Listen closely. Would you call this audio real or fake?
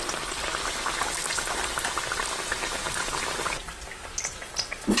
real